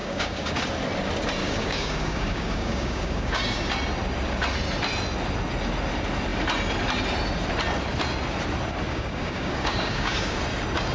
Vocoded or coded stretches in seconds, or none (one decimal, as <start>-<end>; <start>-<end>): 0.0-0.6; 1.4-3.7; 8.9-10.4